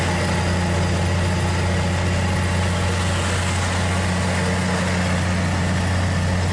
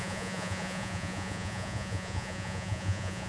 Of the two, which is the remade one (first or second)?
second